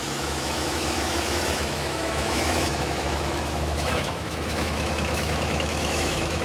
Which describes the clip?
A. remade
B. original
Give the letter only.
A